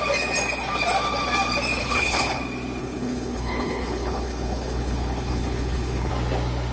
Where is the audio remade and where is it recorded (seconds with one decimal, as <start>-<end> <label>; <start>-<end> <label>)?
0.0-1.8 recorded; 1.8-2.4 remade; 2.4-2.8 recorded; 2.8-6.1 remade; 6.1-6.7 recorded